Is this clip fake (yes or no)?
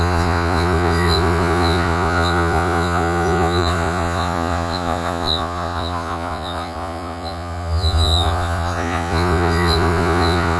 yes